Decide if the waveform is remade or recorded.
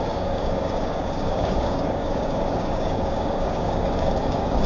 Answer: remade